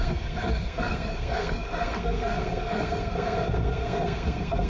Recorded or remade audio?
remade